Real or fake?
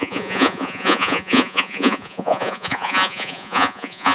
fake